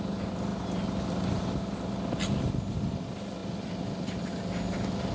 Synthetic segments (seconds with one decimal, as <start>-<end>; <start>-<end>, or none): none